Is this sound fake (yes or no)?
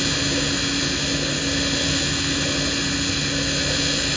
no